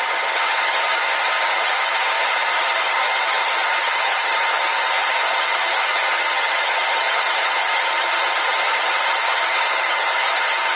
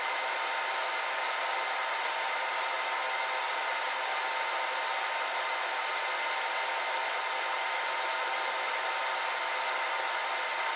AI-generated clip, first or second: first